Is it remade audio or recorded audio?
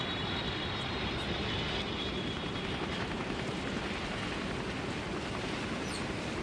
remade